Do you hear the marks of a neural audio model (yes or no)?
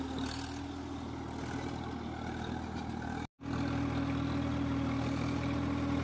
no